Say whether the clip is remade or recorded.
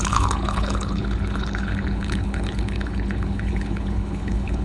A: remade